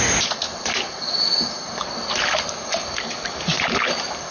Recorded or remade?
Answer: recorded